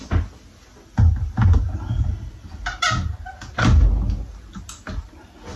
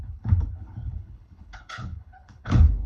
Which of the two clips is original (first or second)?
first